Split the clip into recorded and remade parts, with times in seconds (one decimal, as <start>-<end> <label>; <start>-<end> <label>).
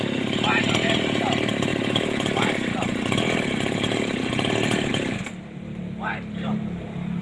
0.0-7.2 recorded